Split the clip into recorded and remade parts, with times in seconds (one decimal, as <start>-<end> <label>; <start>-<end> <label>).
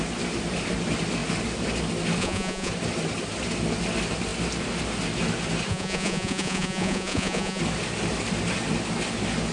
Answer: 0.0-2.2 recorded; 2.2-2.7 remade; 2.7-5.7 recorded; 5.7-7.6 remade; 7.6-9.5 recorded